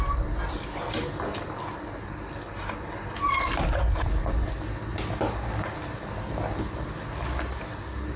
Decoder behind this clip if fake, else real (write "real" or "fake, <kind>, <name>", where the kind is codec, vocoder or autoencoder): real